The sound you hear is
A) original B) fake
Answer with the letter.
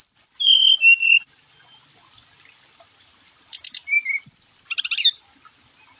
A